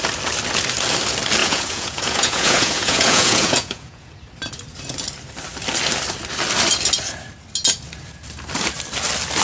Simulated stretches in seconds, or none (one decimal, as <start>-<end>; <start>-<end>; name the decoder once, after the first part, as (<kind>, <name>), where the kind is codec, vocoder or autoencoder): 1.4-4.1 (vocoder, Vocos)